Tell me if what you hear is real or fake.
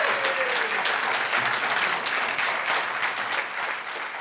real